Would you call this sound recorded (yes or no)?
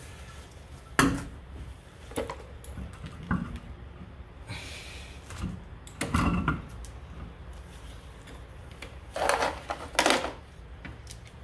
yes